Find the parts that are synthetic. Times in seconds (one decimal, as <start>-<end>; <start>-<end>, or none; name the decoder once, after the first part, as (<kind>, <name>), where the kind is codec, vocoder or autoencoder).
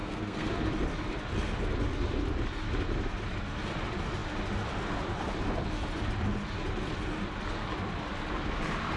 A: 0.0-0.5 (codec, SNAC)